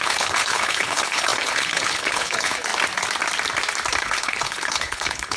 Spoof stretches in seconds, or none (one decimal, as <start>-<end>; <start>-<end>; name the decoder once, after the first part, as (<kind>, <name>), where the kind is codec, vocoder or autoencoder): 0.0-2.7 (codec, HILCodec); 4.0-5.4